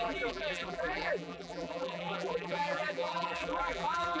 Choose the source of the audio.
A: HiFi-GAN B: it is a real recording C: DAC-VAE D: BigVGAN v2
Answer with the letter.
D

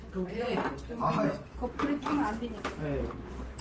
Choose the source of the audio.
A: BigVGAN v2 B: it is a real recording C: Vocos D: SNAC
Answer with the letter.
A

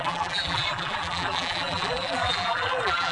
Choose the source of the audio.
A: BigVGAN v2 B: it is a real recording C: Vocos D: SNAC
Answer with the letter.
A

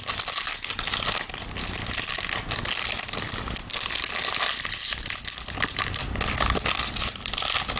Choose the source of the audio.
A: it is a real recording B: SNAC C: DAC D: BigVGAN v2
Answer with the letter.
A